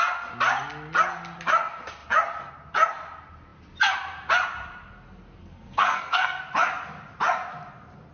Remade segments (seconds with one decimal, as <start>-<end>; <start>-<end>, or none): 5.4-6.4